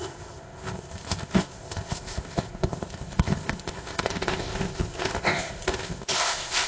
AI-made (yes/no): yes